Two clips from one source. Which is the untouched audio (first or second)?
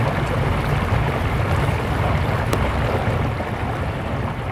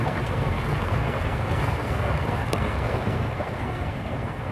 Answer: first